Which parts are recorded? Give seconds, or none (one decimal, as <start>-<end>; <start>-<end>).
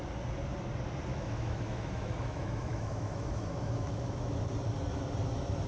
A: 0.0-1.1; 4.5-5.7